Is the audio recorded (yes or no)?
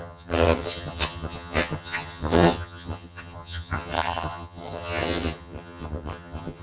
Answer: no